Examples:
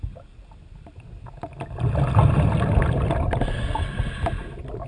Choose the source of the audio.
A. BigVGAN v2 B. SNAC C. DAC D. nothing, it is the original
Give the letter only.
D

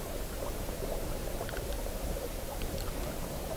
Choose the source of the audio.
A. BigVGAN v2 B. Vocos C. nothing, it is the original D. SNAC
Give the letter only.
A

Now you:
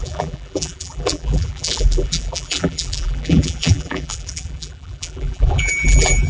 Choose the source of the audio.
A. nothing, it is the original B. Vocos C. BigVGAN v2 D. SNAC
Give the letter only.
C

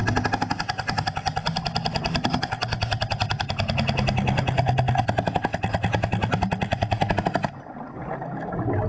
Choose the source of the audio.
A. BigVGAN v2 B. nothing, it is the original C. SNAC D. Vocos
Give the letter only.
B